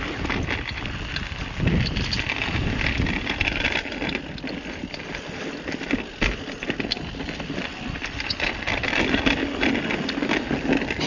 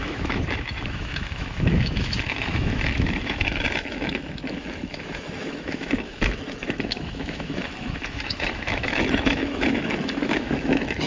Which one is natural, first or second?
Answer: first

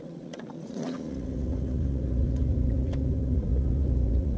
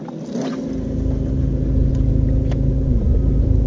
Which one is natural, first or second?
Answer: second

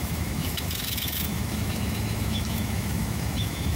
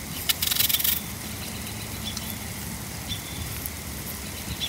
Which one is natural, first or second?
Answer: second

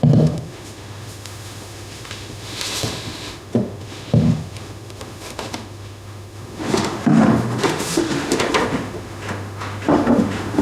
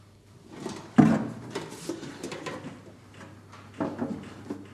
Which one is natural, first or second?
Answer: second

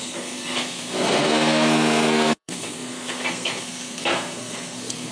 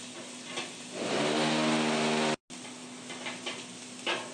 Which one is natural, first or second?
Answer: second